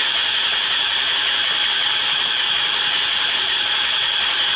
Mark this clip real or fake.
real